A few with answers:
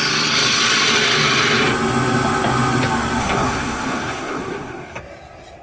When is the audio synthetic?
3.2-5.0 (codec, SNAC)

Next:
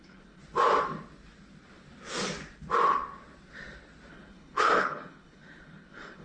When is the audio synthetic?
0.0-0.4 (codec, HILCodec); 4.1-6.2

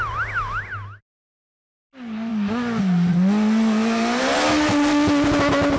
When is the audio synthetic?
none

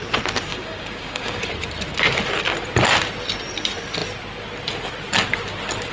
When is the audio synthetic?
0.5-1.5 (codec, DAC)

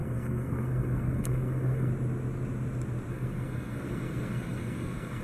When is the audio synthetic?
0.0-1.9 (codec, SNAC); 3.1-5.2

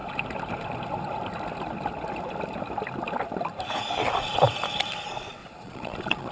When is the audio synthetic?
5.4-6.3 (vocoder, Vocos)

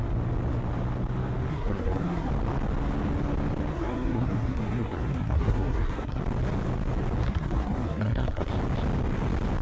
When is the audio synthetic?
1.5-2.3 (codec, SNAC); 3.7-6.2; 7.2-8.5

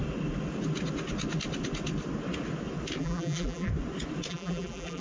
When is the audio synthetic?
3.0-3.7 (vocoder, BigVGAN v2); 4.3-5.0